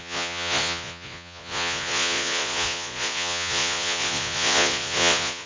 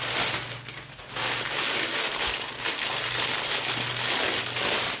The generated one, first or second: first